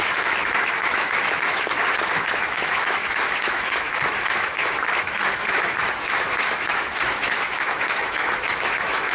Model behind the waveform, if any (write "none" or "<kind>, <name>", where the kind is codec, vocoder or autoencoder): autoencoder, DAC-VAE